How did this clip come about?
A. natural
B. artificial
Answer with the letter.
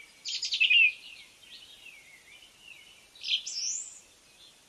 A